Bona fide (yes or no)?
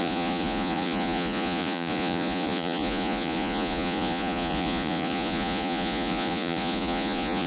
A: no